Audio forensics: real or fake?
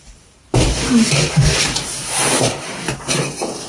fake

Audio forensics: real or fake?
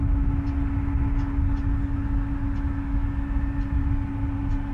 real